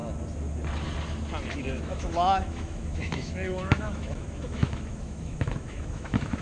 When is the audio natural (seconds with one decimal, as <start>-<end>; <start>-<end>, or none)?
0.0-1.5